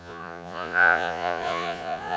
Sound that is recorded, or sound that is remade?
remade